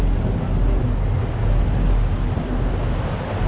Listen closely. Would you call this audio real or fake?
real